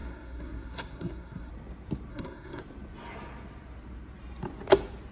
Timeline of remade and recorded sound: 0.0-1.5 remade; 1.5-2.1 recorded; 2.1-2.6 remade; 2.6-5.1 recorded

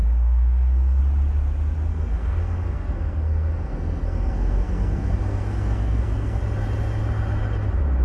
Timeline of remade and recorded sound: 0.0-1.0 remade; 1.0-1.9 recorded; 1.9-6.4 remade; 6.4-8.0 recorded

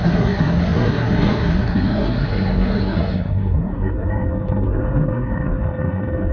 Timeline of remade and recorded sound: 0.0-6.3 remade

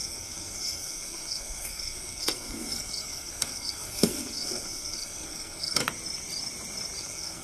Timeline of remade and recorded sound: 0.0-5.8 remade; 5.8-7.0 recorded; 7.0-7.4 remade

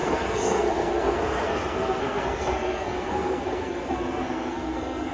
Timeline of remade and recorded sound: 0.0-5.1 remade